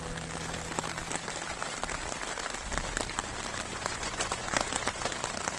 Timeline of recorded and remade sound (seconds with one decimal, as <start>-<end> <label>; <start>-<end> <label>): 0.0-3.7 recorded; 3.7-5.1 remade; 5.1-5.6 recorded